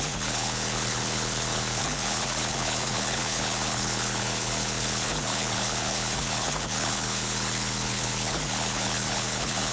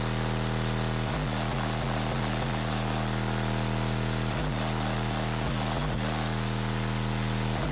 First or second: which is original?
second